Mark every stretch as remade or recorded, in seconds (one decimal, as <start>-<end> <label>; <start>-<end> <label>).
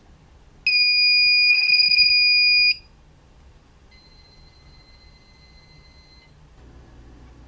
0.0-1.5 recorded; 1.5-2.1 remade; 2.1-7.5 recorded